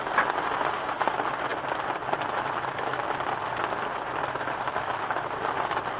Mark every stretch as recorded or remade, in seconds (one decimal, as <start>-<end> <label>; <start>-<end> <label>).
0.0-6.0 recorded